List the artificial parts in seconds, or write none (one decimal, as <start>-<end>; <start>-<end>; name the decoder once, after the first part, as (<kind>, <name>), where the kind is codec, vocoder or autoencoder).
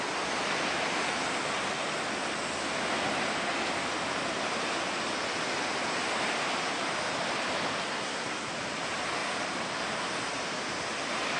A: 7.9-8.5 (codec, SNAC)